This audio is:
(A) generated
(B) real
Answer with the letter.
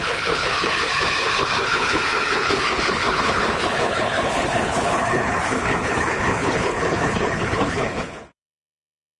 A